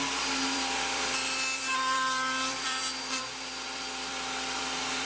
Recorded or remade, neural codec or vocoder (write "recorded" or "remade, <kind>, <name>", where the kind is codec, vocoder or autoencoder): remade, vocoder, BigVGAN v2